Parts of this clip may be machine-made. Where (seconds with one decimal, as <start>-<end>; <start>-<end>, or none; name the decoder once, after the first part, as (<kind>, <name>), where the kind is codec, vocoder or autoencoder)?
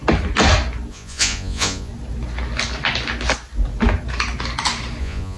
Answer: 0.9-1.9 (vocoder, Vocos); 5.0-5.4